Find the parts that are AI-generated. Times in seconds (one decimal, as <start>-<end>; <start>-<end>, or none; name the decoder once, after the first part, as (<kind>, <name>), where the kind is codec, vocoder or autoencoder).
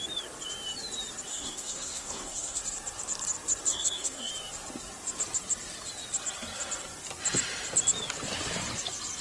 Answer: 1.3-2.6 (codec, SNAC); 3.7-4.3